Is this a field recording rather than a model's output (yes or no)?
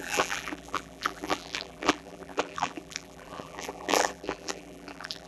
no